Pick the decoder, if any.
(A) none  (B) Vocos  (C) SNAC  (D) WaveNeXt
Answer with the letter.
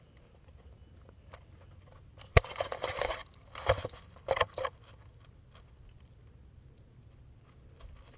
A